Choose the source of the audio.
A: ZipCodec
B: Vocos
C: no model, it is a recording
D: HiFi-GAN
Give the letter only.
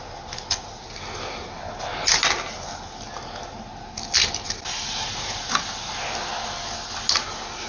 C